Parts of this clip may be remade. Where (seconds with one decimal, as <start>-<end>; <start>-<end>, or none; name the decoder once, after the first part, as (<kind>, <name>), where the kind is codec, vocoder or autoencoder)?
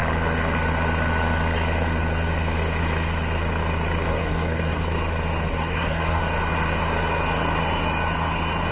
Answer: 4.1-4.8 (codec, SNAC); 5.5-6.2